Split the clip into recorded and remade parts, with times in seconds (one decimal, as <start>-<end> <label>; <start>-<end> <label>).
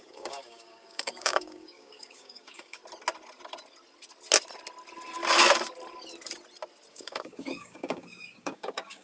0.0-2.8 remade; 2.8-6.9 recorded; 6.9-9.0 remade